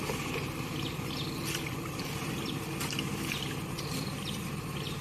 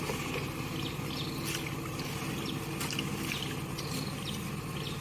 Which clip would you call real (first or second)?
second